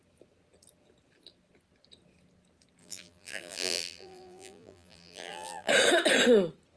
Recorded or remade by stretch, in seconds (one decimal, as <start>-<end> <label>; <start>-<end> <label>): 0.0-2.8 recorded; 2.8-5.7 remade; 5.7-6.8 recorded